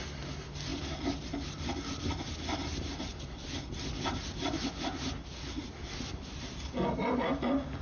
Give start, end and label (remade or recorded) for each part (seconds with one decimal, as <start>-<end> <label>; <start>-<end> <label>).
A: 0.0-7.8 recorded